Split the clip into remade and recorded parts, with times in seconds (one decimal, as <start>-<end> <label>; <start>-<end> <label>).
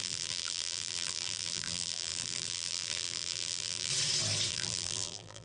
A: 0.0-3.9 remade; 3.9-4.5 recorded; 4.5-5.4 remade